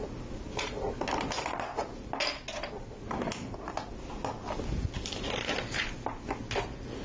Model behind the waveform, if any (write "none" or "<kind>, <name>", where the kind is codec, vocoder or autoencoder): none